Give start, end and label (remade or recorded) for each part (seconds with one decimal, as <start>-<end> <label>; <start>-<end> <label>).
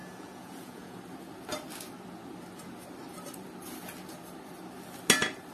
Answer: 0.0-1.0 remade; 1.0-5.5 recorded